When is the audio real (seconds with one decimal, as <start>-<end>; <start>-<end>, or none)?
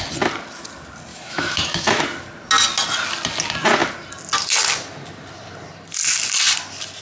0.0-1.1; 2.0-7.0